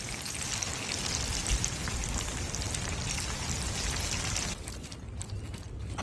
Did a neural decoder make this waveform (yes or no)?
no